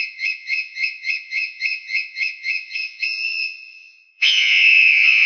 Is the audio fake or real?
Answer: fake